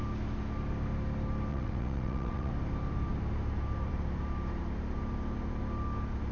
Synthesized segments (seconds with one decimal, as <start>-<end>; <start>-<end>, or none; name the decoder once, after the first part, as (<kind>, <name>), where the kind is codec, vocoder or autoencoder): 1.5-2.5 (vocoder, WaveNeXt)